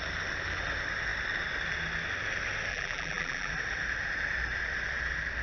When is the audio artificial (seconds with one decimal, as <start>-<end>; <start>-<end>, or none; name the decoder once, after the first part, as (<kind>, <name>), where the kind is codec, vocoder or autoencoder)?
2.7-3.5 (vocoder, BigVGAN v2)